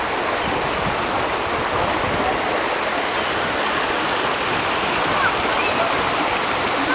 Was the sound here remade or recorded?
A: recorded